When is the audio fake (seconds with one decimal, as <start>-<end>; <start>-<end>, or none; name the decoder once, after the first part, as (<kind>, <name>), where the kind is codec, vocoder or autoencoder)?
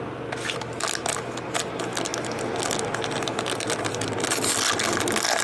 none